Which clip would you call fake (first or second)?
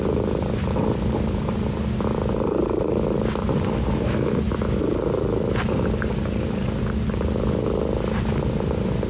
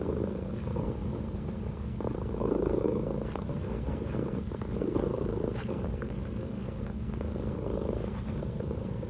second